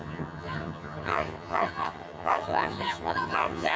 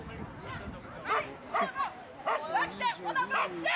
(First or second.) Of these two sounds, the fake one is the first